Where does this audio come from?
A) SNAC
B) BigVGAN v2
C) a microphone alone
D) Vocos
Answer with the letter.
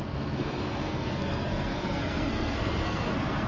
A